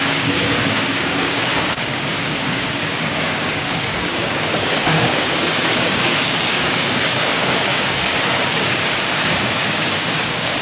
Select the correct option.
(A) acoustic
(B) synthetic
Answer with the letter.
B